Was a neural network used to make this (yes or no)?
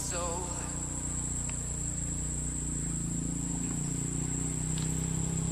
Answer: no